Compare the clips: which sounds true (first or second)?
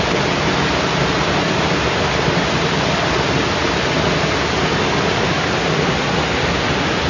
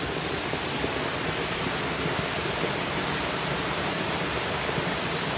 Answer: first